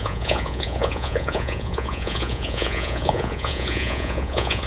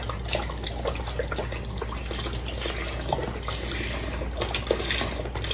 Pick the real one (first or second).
second